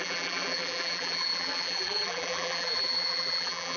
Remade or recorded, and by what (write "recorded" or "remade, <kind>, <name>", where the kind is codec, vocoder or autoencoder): remade, vocoder, BigVGAN v2